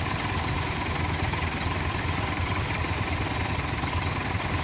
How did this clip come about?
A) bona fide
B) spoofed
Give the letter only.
B